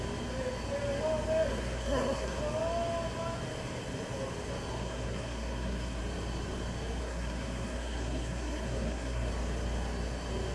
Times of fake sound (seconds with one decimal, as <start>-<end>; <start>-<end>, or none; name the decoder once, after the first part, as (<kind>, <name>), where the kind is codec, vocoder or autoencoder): 1.5-2.4 (codec, SNAC); 4.7-6.0; 7.0-9.3